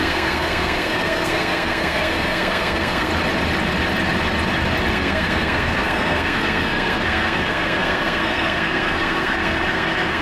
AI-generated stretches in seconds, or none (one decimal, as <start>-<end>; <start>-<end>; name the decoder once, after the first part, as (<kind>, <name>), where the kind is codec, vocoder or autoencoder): 0.0-3.1 (codec, SNAC); 4.9-10.2